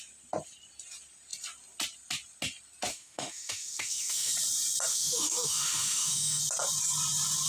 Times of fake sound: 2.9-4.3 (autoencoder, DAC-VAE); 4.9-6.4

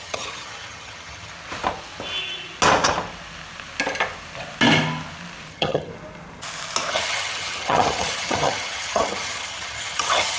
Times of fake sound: 0.0-1.3 (vocoder, HiFi-GAN); 5.5-5.9; 6.9-10.4

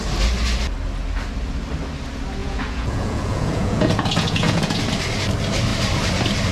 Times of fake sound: 2.4-4.8 (vocoder, Vocos)

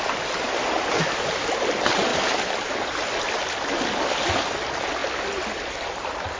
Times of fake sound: 2.1-3.0 (vocoder, BigVGAN v2)